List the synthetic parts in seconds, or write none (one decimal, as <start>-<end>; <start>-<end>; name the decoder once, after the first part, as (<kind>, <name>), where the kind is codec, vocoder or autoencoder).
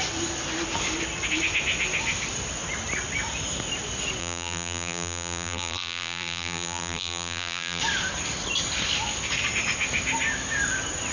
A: 4.2-7.8 (vocoder, BigVGAN v2)